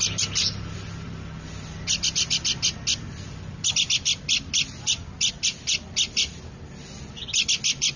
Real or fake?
real